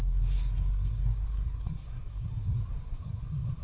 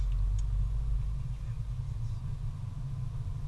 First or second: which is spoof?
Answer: first